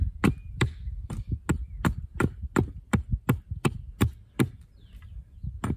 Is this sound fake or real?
real